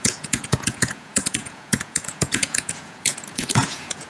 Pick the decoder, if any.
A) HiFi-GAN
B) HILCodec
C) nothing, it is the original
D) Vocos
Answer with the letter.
D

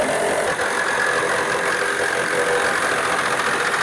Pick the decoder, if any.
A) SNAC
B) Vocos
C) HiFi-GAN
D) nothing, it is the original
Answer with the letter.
D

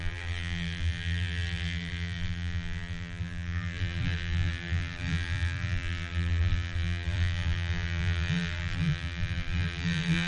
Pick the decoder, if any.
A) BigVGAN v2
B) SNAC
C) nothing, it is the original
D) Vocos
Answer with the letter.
A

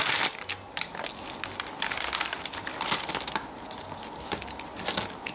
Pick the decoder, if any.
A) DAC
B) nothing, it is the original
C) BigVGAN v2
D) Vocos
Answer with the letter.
B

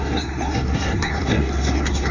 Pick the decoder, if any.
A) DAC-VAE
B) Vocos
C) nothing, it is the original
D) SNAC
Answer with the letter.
D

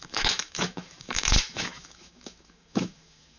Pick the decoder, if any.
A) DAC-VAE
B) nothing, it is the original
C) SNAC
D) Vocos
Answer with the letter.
A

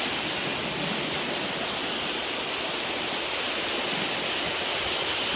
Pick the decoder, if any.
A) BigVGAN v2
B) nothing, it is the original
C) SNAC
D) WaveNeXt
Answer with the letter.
B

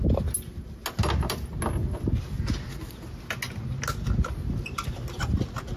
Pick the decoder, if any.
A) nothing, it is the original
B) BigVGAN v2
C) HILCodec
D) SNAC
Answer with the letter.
A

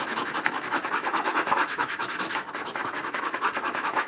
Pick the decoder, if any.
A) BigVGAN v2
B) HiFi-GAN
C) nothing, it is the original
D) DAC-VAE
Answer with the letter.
D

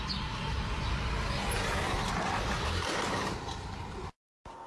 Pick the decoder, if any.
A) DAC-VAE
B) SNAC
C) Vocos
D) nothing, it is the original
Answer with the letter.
D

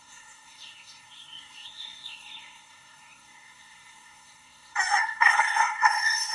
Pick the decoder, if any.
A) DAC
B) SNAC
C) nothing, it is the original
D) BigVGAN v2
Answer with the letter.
B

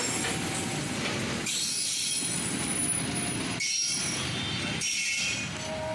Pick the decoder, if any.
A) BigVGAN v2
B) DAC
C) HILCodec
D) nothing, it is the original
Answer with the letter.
D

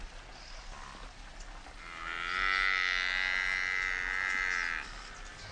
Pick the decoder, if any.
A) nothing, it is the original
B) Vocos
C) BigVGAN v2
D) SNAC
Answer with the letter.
A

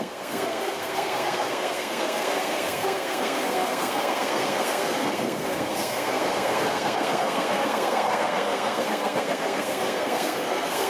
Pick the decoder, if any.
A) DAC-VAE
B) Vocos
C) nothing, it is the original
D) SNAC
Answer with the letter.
D